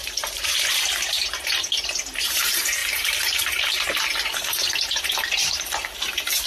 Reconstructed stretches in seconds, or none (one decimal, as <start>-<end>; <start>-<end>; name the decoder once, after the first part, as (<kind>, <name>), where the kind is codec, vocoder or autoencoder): 0.0-6.5 (vocoder, BigVGAN v2)